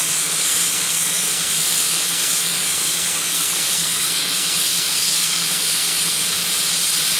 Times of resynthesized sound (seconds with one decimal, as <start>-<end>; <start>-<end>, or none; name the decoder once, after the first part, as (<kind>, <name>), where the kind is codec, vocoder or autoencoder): 0.0-6.4 (codec, SNAC)